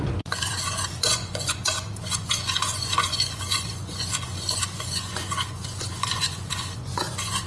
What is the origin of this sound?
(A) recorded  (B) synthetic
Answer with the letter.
B